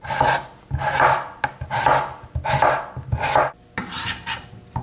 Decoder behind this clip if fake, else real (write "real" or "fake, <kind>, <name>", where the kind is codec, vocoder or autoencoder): real